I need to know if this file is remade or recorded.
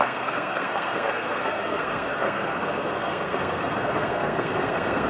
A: remade